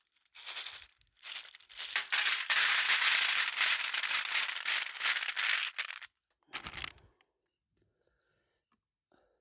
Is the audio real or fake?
real